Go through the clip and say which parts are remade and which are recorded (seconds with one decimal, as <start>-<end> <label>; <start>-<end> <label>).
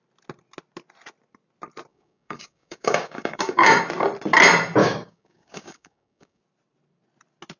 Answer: 0.0-1.9 recorded; 1.9-3.8 remade; 3.8-4.8 recorded; 4.8-6.4 remade; 6.4-7.6 recorded